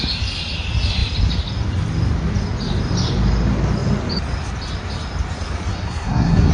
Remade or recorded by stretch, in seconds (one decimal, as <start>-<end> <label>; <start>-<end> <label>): 0.0-5.7 recorded; 5.7-6.5 remade